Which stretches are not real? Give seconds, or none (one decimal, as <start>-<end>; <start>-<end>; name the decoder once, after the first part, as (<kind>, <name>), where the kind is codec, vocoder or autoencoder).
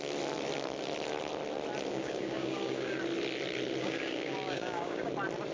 1.9-3.0 (codec, DAC); 3.8-5.1